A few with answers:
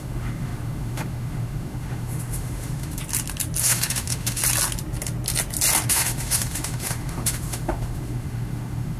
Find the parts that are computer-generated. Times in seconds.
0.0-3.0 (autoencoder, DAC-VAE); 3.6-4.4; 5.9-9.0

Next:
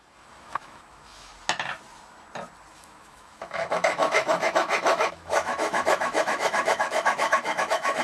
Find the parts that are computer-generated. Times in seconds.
0.0-1.3 (autoencoder, DAC-VAE); 2.7-8.0

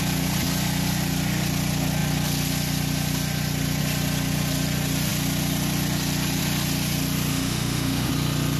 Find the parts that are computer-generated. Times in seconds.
7.3-8.1 (autoencoder, DAC-VAE)

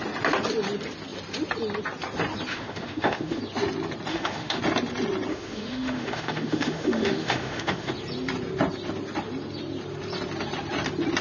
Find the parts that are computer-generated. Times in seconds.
2.5-3.4 (autoencoder, DAC-VAE); 4.1-4.6; 5.3-7.9